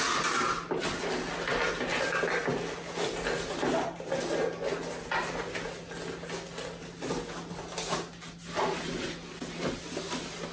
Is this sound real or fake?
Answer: real